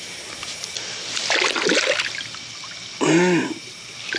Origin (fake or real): real